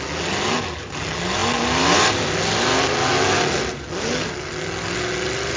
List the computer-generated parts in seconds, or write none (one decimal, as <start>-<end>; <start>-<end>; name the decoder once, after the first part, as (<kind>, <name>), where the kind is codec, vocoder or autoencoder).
none